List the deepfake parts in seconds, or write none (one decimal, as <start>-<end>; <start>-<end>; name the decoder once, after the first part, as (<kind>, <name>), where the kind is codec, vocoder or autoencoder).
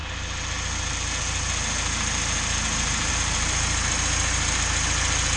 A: none